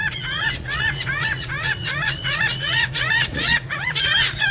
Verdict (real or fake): fake